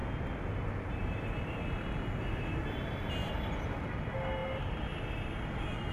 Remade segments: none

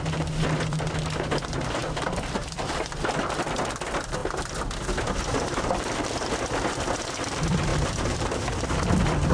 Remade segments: 0.0-4.2 (vocoder, BigVGAN v2); 5.6-9.3

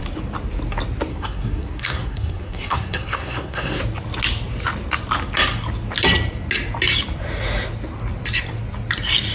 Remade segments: 1.1-3.8 (codec, SNAC)

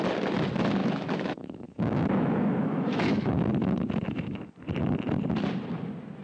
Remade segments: 0.8-4.5 (autoencoder, DAC-VAE)